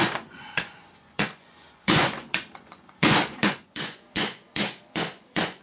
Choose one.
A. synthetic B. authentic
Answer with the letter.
A